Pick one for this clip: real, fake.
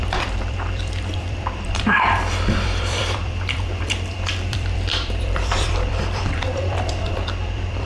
fake